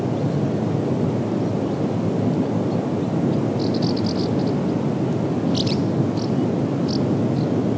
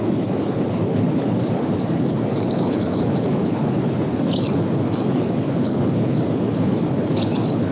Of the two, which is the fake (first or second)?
second